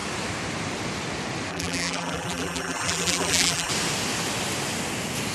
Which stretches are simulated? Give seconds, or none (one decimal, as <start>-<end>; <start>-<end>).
1.5-3.7